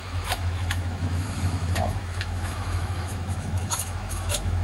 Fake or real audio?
fake